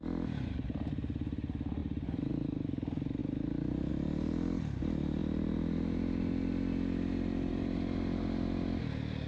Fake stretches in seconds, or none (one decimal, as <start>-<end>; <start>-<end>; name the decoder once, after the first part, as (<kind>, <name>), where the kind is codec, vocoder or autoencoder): none